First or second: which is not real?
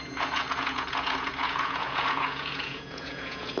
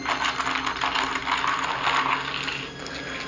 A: first